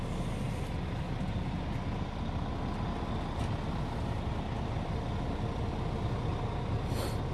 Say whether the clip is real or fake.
real